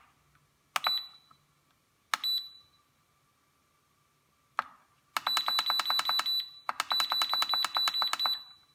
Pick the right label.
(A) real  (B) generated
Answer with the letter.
A